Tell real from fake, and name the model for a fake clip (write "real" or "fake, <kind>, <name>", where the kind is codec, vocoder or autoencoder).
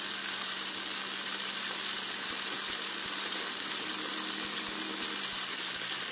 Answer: real